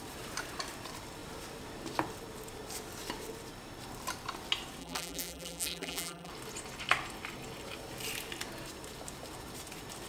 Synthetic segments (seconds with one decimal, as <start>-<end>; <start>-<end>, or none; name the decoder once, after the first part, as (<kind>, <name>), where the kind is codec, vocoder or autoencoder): 4.8-6.3 (vocoder, BigVGAN v2)